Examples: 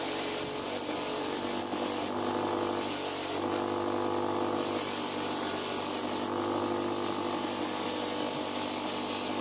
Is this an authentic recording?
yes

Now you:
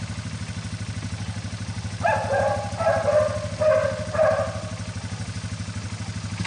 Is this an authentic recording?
yes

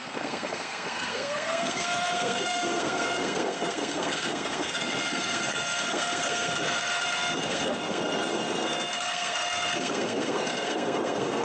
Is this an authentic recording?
no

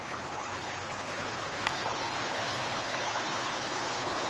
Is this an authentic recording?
no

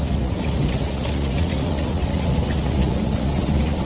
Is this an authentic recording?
no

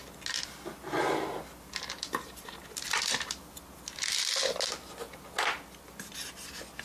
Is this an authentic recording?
yes